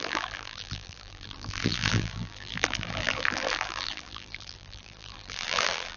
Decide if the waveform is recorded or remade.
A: remade